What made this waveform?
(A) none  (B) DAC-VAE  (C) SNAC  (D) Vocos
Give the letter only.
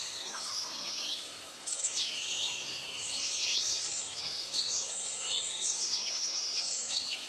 C